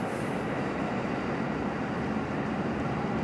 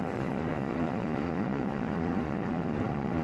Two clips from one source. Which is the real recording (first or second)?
first